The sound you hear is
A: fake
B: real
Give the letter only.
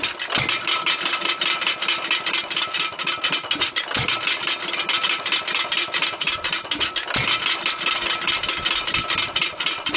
B